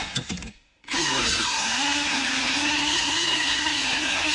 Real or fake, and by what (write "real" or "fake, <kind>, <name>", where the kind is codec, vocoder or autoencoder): fake, codec, SNAC